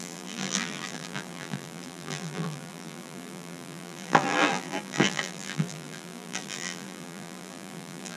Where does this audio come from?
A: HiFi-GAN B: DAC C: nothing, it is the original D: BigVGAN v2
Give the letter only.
D